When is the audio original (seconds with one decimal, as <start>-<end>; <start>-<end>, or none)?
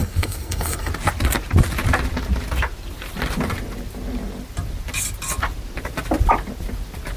0.9-7.2